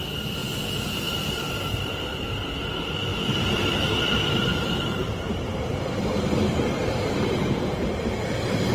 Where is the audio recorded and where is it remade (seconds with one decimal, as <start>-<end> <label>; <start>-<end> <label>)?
0.0-8.7 recorded